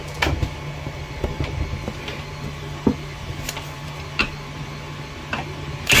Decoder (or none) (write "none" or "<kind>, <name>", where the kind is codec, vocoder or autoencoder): none